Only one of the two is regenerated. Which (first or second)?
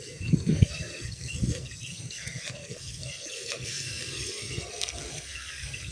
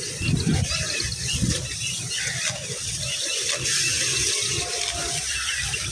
first